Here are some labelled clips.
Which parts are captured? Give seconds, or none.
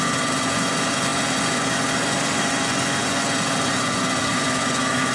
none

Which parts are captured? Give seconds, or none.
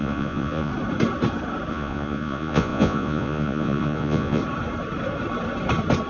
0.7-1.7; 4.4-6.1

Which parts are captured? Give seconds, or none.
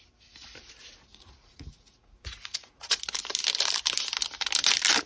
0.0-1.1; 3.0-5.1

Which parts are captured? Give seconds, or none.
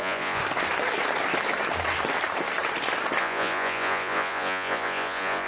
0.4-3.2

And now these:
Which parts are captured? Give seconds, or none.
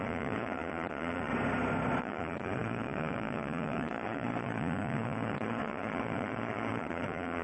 1.3-2.0